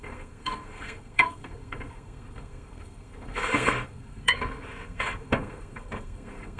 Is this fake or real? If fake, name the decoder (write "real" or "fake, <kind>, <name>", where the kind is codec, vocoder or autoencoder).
fake, codec, SNAC